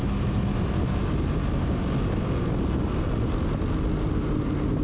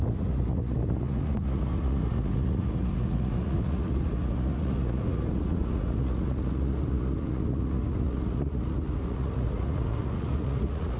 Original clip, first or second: first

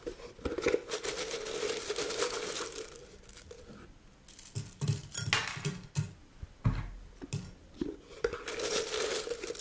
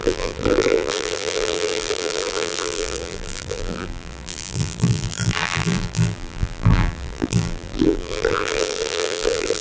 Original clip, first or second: first